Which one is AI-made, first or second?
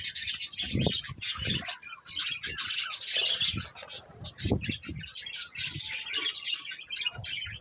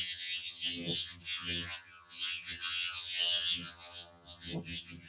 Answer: second